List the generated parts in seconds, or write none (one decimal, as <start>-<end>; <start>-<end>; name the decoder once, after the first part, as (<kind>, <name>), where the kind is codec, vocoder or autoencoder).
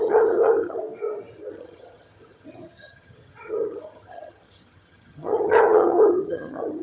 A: 0.0-0.8 (vocoder, HiFi-GAN); 1.5-6.8